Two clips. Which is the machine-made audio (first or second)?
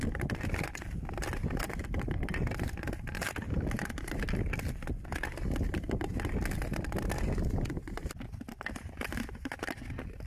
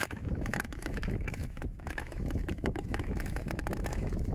second